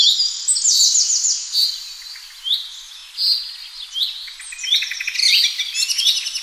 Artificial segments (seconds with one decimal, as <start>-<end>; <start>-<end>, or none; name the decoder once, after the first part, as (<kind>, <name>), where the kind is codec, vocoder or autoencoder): none